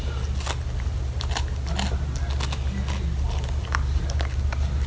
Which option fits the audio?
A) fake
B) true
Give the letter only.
B